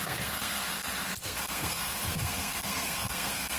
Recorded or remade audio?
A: remade